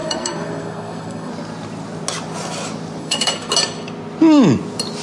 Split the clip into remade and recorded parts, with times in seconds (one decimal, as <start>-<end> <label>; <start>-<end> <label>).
0.0-1.3 remade; 1.3-3.0 recorded; 3.0-3.5 remade; 3.5-5.0 recorded